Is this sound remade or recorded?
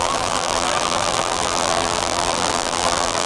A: remade